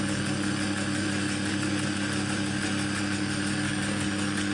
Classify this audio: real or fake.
real